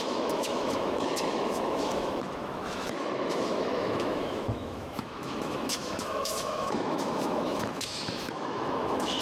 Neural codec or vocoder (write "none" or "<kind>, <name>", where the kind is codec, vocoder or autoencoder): autoencoder, DAC-VAE